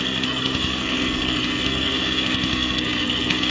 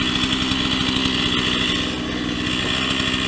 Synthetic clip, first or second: first